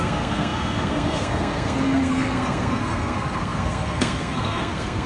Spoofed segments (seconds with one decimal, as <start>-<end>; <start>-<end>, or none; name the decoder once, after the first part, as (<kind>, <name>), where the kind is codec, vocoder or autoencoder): 0.0-5.1 (codec, SNAC)